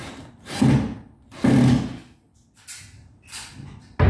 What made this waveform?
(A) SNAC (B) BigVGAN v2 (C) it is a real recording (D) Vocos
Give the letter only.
C